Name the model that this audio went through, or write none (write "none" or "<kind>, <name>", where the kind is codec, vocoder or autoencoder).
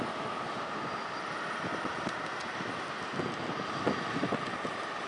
none